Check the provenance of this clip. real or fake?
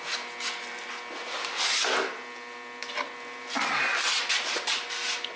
real